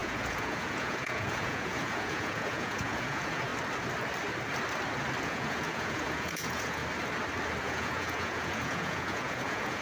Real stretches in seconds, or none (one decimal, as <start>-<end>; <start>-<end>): 3.5-5.2; 6.8-7.6